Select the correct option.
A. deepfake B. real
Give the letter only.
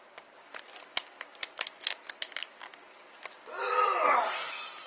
B